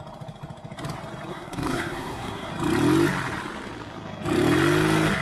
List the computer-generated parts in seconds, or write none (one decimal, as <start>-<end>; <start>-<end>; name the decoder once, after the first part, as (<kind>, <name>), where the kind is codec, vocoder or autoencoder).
1.3-2.5 (codec, SNAC)